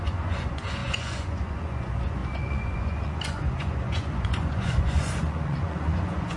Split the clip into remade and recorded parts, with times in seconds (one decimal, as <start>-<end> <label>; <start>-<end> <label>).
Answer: 0.0-6.4 remade